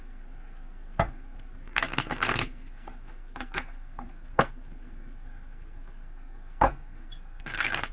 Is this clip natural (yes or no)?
no